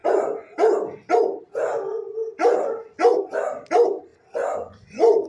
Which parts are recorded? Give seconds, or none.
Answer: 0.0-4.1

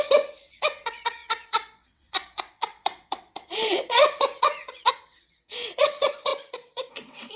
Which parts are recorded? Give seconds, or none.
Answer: none